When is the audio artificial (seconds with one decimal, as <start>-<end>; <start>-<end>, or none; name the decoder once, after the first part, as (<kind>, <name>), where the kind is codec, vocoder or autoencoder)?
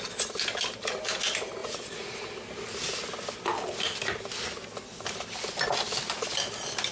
1.6-2.2 (vocoder, Vocos)